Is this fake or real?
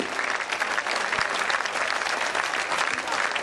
real